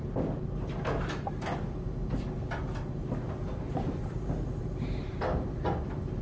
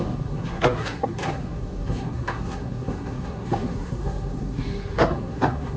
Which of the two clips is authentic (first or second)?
first